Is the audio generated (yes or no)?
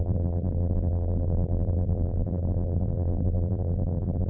yes